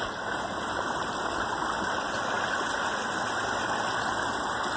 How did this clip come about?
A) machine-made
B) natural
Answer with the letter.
B